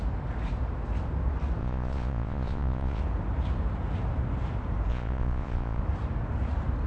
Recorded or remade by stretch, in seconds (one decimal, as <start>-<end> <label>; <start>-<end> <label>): 0.0-1.6 recorded; 1.6-3.0 remade; 3.0-4.9 recorded; 4.9-5.8 remade; 5.8-6.9 recorded